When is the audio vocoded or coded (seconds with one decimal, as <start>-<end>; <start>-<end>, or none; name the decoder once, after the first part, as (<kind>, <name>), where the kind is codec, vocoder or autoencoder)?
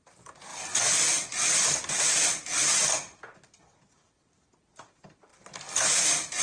none